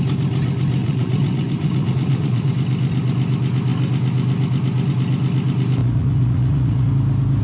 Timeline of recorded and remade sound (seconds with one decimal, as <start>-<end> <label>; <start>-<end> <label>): 0.0-0.8 recorded; 0.8-2.5 remade; 2.5-5.8 recorded; 5.8-6.9 remade; 6.9-7.4 recorded